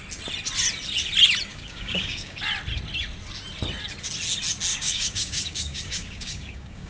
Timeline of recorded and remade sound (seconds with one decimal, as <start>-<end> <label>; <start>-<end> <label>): 0.0-1.5 recorded; 1.5-2.4 remade; 2.4-4.7 recorded; 4.7-6.9 remade